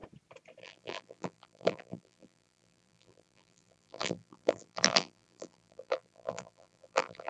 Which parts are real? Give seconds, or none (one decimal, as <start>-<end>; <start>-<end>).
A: 0.0-0.6